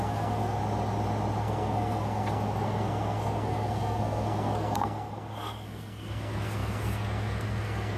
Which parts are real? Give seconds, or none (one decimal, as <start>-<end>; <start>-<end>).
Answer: 0.6-1.4